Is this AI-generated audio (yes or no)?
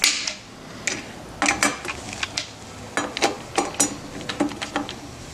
no